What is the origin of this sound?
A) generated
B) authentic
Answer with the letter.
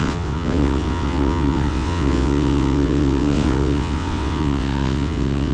A